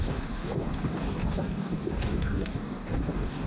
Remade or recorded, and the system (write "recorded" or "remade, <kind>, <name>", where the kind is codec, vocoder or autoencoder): remade, codec, DAC